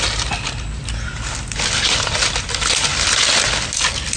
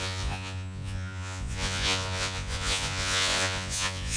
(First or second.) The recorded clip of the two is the first